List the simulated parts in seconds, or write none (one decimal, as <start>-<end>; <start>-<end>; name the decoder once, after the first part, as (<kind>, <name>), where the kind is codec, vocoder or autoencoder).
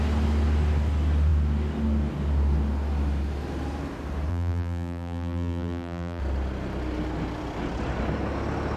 4.3-6.2 (vocoder, BigVGAN v2)